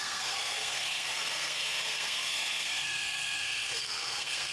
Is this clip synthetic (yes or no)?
yes